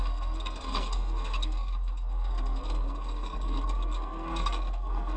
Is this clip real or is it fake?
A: fake